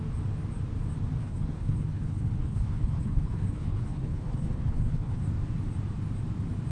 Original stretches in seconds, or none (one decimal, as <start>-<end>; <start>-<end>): 0.0-1.2; 5.2-6.7